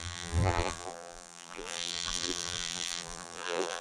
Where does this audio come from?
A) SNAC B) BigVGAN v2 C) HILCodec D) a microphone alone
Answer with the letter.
B